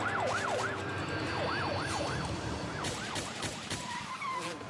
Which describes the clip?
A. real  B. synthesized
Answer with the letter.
B